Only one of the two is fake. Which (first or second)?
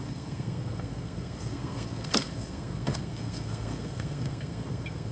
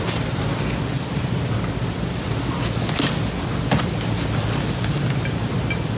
first